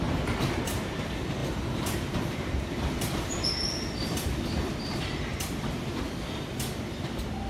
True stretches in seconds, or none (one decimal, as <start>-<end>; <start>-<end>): 0.0-1.4; 5.9-7.5